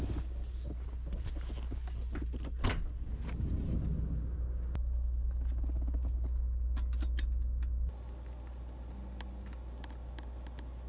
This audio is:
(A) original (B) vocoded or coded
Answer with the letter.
A